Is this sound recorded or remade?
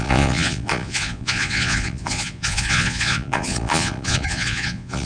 remade